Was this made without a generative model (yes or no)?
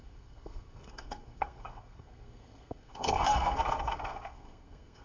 no